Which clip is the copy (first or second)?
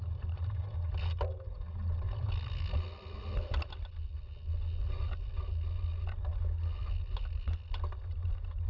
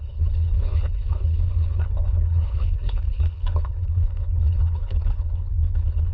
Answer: second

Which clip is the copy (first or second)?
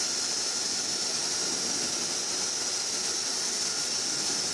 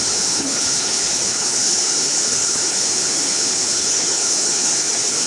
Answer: second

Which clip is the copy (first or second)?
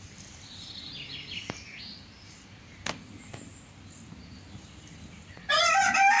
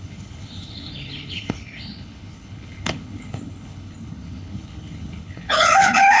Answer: second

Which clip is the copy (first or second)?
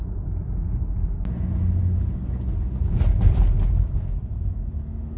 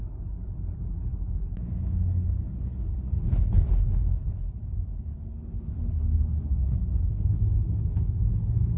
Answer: second